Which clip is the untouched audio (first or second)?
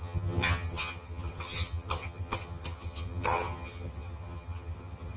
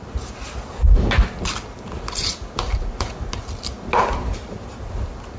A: second